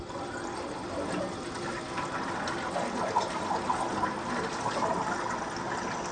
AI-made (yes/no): no